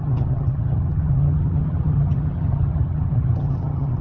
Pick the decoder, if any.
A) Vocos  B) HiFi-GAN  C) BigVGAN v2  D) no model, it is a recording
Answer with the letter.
B